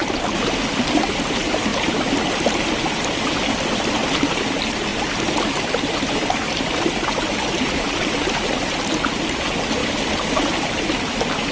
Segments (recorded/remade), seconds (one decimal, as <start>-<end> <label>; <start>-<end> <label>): 0.0-11.5 recorded

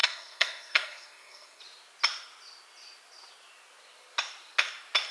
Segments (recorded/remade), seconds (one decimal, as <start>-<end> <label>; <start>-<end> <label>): 0.0-1.6 remade; 1.6-5.1 recorded

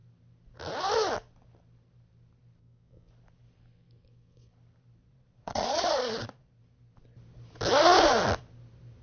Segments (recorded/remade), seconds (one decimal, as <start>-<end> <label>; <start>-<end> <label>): 0.0-5.0 recorded; 5.0-6.6 remade; 6.6-9.0 recorded

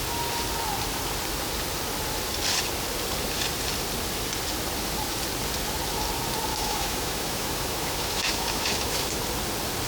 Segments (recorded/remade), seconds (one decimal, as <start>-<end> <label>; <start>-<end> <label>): 0.0-6.5 recorded; 6.5-9.2 remade; 9.2-9.9 recorded

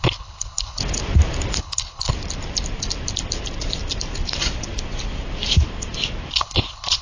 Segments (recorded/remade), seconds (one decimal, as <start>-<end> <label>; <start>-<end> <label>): 0.0-0.8 remade; 0.8-1.6 recorded; 1.6-2.1 remade; 2.1-6.3 recorded; 6.3-7.0 remade

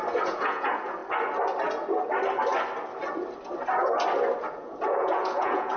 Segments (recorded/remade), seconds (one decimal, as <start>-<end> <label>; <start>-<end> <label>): 0.0-1.0 remade; 1.0-4.5 recorded; 4.5-5.8 remade